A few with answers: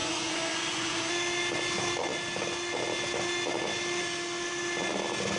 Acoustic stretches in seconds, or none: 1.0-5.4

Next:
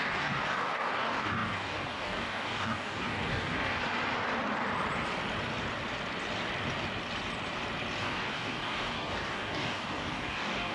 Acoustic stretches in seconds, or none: 3.8-8.0

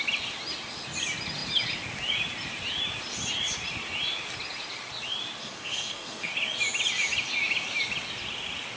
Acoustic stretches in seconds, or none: 0.0-5.4; 6.3-8.8

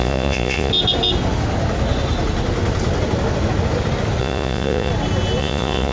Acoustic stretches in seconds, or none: 0.7-4.2; 4.9-5.4

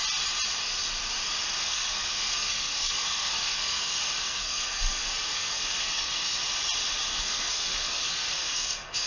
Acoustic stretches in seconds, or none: 0.0-1.6; 6.4-7.1

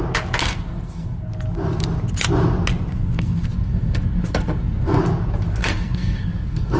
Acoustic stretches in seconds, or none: 0.0-0.4; 1.3-2.9; 5.0-5.6